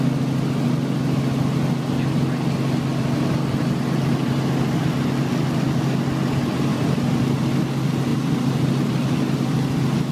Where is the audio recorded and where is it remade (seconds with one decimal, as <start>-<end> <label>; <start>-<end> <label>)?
0.0-6.7 recorded; 6.7-7.2 remade; 7.2-8.1 recorded; 8.1-9.2 remade; 9.2-10.1 recorded